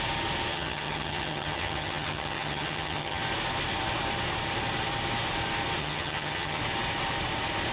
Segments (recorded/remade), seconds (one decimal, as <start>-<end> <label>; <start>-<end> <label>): 0.0-0.5 recorded; 0.5-3.2 remade; 3.2-5.8 recorded; 5.8-6.6 remade; 6.6-7.7 recorded

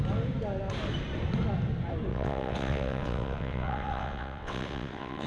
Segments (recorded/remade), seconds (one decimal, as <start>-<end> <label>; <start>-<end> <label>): 0.0-2.1 recorded; 2.1-5.3 remade